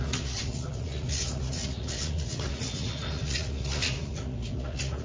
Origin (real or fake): fake